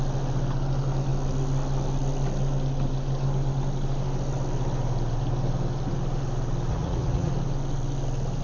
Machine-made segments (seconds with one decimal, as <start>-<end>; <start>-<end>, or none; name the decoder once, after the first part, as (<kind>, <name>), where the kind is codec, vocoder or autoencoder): 6.7-7.3 (vocoder, Vocos)